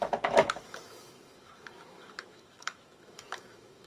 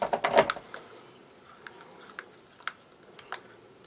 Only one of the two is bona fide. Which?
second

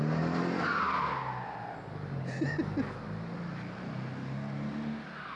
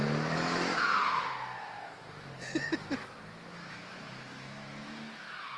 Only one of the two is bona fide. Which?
first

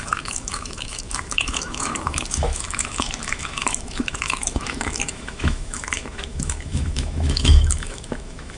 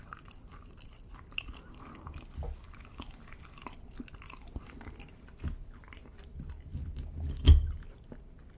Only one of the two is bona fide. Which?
second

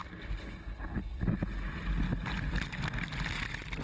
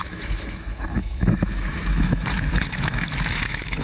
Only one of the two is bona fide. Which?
first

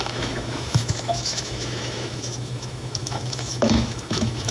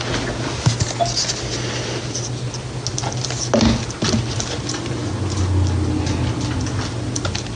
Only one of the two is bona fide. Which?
second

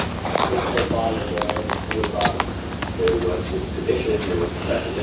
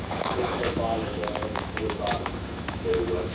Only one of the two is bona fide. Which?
first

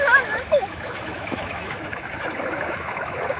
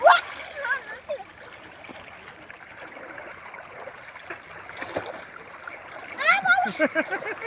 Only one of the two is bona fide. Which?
second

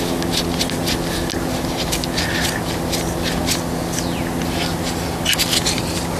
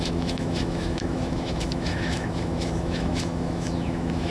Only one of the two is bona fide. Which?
first